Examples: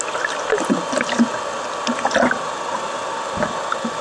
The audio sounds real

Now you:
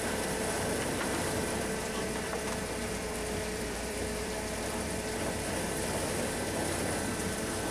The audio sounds fake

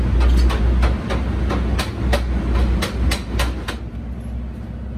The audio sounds real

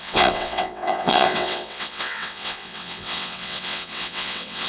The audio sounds fake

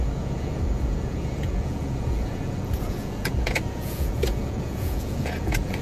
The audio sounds fake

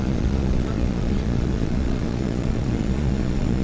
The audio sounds fake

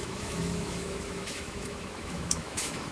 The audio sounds fake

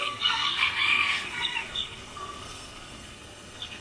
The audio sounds fake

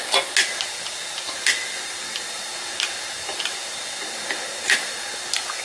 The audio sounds real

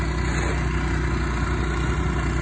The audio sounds real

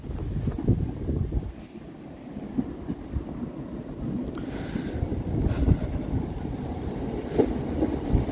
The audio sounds real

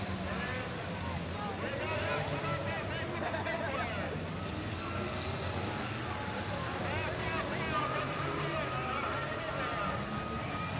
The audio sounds real